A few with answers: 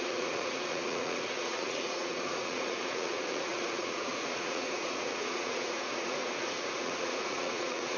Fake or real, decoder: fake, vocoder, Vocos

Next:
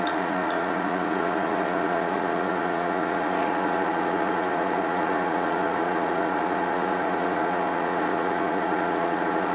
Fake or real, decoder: fake, vocoder, Vocos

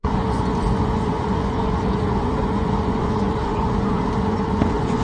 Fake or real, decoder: fake, vocoder, Vocos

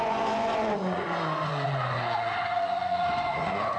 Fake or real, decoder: fake, vocoder, Vocos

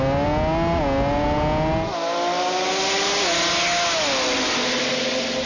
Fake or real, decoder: real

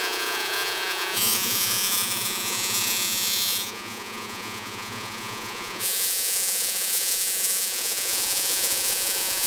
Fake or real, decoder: fake, vocoder, Vocos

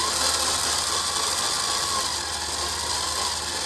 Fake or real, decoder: real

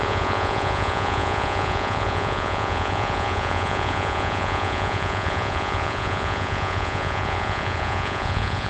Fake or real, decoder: fake, vocoder, Vocos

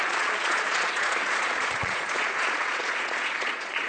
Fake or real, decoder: fake, vocoder, Vocos